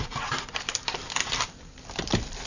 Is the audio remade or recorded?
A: remade